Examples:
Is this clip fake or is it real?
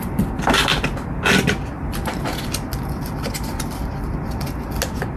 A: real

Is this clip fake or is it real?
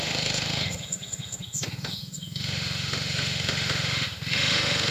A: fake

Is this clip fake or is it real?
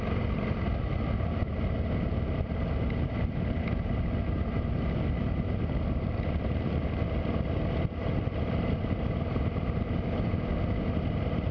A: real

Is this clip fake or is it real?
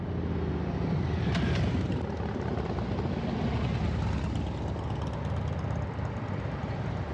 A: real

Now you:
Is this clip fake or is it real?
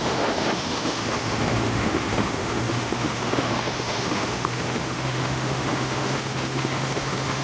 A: fake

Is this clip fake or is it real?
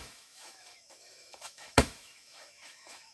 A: fake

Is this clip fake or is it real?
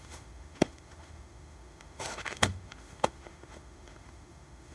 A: fake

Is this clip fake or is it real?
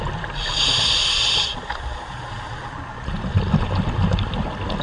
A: real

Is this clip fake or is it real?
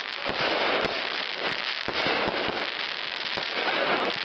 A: real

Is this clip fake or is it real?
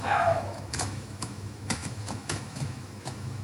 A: fake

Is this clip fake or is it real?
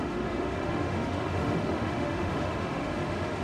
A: fake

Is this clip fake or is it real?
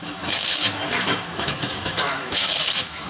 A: fake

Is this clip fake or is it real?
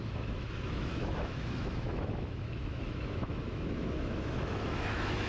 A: fake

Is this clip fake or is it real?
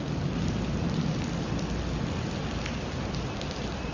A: real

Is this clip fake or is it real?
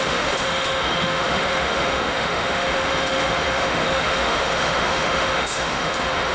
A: fake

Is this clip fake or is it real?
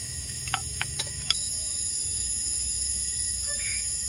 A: fake